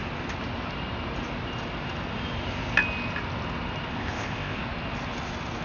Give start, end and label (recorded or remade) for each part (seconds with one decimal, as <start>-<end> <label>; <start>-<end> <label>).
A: 0.0-3.9 recorded; 3.9-4.6 remade; 4.6-5.6 recorded